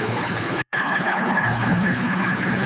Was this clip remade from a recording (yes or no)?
yes